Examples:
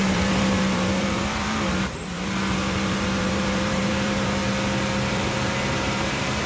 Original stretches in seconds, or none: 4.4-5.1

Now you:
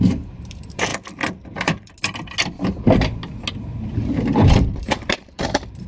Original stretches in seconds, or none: 0.9-3.8

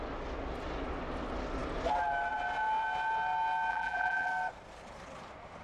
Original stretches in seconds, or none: 0.0-3.7; 4.3-5.6

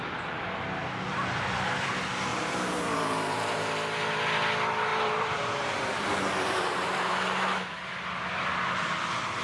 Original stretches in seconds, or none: 0.0-2.3; 3.7-4.9; 7.1-9.4

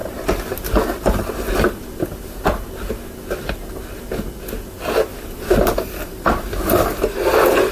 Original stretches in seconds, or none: 0.0-5.1; 6.6-7.7

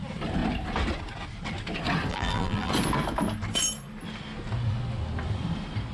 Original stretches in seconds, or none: 0.0-2.1; 2.7-5.9

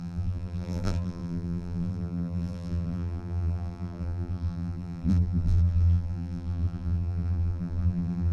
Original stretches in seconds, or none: none